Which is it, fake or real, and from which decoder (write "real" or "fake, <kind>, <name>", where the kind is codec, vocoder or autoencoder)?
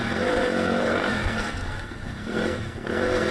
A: fake, codec, SNAC